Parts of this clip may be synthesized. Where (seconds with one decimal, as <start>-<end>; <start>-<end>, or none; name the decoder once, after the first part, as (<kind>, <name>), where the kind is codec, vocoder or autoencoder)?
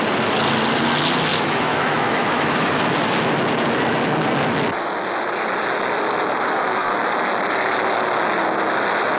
1.3-2.7 (autoencoder, DAC-VAE)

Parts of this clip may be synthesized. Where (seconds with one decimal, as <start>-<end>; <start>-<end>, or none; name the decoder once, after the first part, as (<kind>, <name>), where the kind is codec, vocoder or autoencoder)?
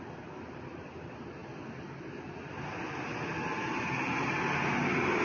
none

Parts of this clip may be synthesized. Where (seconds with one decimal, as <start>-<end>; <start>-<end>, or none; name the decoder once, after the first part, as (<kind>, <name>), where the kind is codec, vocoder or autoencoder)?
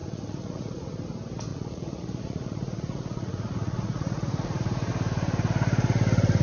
0.0-0.9 (vocoder, Vocos); 1.5-4.9